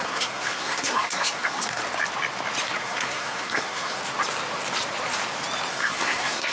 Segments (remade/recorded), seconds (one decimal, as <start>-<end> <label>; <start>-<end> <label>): 0.0-1.8 remade; 1.8-2.8 recorded; 2.8-4.0 remade; 4.0-5.7 recorded; 5.7-6.5 remade